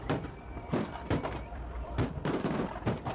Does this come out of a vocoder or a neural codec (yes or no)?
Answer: yes